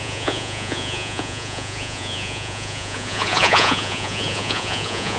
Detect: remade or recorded remade